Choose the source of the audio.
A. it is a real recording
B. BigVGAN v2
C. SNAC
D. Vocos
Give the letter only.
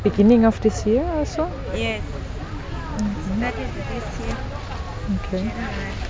A